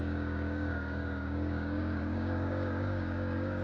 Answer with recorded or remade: remade